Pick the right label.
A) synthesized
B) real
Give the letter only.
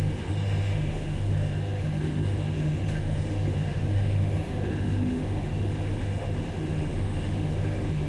A